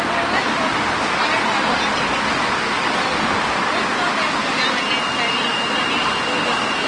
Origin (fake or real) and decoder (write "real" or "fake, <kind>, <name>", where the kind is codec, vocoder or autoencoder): real